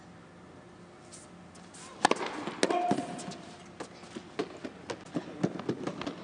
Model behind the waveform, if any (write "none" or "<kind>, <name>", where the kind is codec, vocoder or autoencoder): none